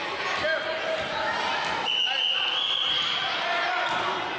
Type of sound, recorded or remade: recorded